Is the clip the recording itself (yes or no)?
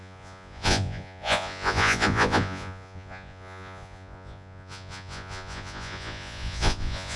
no